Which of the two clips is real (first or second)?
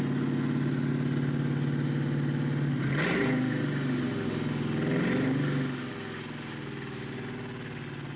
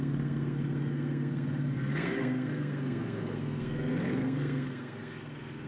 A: first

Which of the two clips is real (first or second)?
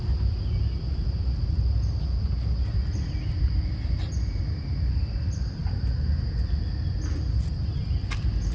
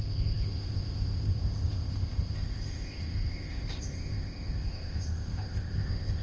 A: first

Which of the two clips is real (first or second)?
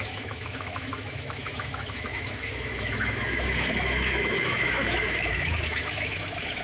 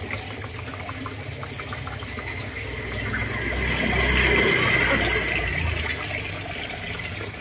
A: second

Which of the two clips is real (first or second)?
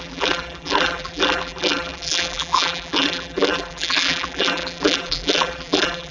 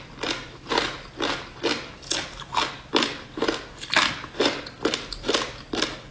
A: second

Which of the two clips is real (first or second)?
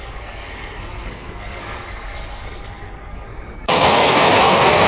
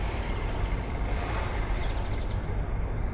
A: second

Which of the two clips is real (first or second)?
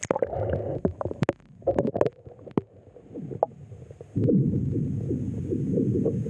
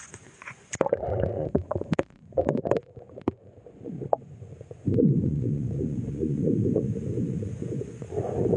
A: first